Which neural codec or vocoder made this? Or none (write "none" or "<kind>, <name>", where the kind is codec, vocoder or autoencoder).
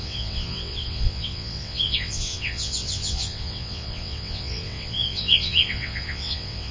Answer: vocoder, WaveNeXt